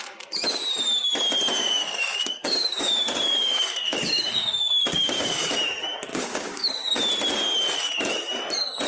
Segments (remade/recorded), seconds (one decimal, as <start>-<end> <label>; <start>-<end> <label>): 0.0-1.6 recorded; 1.6-5.5 remade; 5.5-6.1 recorded; 6.1-7.0 remade; 7.0-8.9 recorded